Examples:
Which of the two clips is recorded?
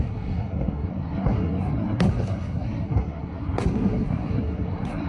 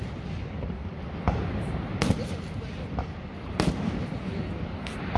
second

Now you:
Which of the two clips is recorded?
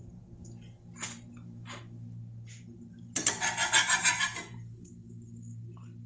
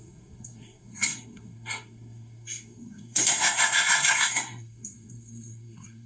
first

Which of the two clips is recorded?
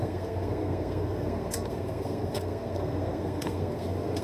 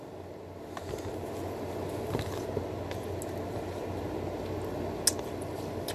second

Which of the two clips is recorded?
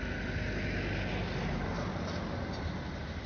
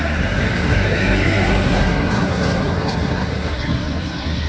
first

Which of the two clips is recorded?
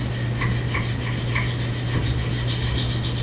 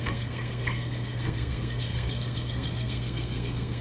first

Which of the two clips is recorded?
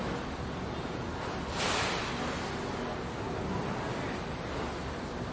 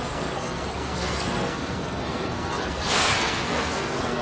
first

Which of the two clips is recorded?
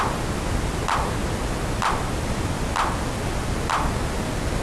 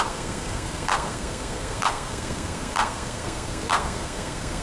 first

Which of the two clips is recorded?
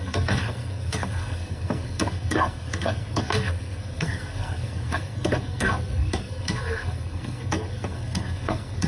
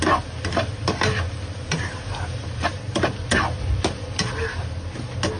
second